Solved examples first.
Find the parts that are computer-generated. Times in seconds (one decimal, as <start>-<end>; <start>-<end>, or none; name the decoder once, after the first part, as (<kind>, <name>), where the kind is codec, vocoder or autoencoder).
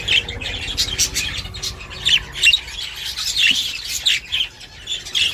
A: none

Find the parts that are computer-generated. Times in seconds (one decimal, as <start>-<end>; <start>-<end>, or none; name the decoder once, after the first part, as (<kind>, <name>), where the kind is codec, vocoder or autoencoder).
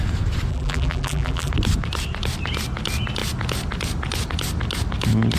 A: 0.5-1.5 (vocoder, BigVGAN v2)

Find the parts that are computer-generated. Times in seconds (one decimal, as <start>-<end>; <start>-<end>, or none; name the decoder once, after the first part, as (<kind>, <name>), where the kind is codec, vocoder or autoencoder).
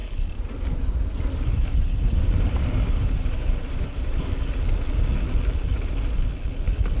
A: 0.0-4.2 (vocoder, BigVGAN v2)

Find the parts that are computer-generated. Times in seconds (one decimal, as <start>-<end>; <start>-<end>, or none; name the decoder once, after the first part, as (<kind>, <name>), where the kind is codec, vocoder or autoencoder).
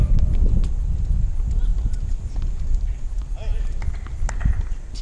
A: 1.0-5.0 (vocoder, BigVGAN v2)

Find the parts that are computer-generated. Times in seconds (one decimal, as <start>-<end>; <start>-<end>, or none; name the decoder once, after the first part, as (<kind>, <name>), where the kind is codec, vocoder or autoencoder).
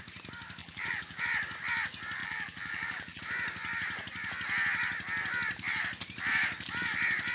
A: 0.6-1.2 (vocoder, BigVGAN v2); 2.2-3.2